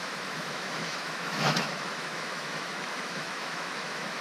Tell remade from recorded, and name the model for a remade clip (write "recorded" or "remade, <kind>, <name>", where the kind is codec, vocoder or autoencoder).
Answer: remade, autoencoder, DAC-VAE